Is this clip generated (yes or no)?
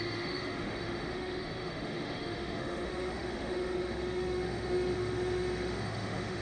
yes